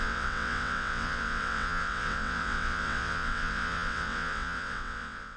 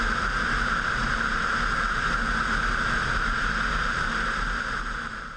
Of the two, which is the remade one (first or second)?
first